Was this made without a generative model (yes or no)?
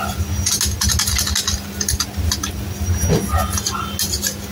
yes